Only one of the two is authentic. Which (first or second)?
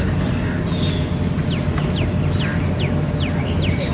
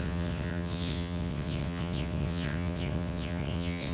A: first